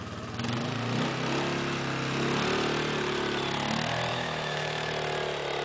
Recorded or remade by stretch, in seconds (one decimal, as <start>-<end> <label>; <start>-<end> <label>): 0.0-4.1 recorded; 4.1-4.9 remade; 4.9-5.6 recorded